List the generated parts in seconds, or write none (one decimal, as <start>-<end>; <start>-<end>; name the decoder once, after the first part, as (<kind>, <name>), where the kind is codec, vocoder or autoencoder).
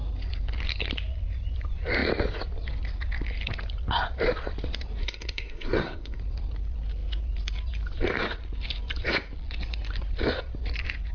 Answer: 5.0-6.2 (codec, SNAC)